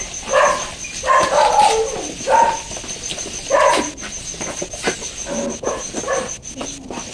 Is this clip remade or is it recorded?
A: recorded